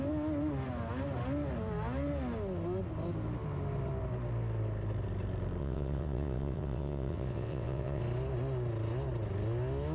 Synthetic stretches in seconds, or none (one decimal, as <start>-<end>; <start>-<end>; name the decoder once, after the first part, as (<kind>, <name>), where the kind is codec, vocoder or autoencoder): 5.6-8.0 (vocoder, WaveNeXt)